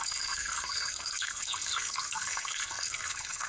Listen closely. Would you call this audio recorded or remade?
remade